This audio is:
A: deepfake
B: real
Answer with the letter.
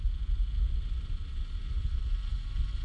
B